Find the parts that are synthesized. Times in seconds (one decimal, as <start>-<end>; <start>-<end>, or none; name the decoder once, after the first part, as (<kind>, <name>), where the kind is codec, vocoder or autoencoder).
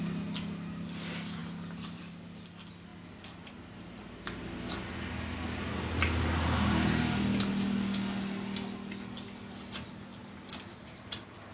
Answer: none